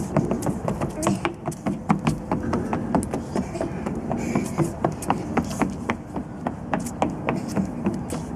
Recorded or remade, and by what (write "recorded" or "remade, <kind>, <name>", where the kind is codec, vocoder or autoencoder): recorded